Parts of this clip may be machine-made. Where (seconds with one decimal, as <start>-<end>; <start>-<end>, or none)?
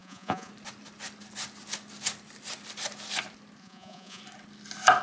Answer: 0.0-0.5; 3.6-4.2